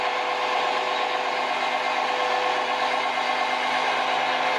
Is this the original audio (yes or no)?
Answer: yes